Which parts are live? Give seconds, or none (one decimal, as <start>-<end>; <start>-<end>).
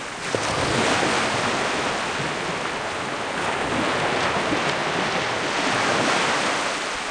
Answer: 0.0-7.1